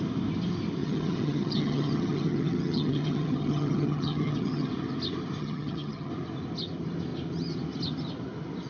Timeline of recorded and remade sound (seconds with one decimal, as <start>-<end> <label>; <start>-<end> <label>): 0.0-0.8 recorded; 0.8-4.7 remade; 4.7-5.4 recorded; 5.4-6.1 remade; 6.1-8.7 recorded